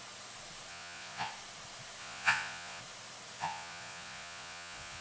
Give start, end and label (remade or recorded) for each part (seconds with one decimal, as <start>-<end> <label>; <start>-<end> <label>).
0.0-0.7 recorded; 0.7-1.3 remade; 1.3-2.0 recorded; 2.0-2.8 remade; 2.8-3.4 recorded; 3.4-5.0 remade